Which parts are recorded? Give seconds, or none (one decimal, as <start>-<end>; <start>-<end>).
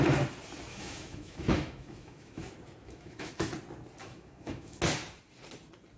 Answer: 0.0-0.7; 2.4-2.8; 3.5-4.0; 4.8-6.0